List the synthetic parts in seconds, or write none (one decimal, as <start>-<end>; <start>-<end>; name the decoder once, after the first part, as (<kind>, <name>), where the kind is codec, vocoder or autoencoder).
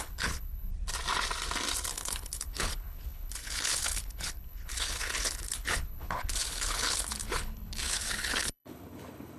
0.0-0.7 (codec, HILCodec); 1.9-9.4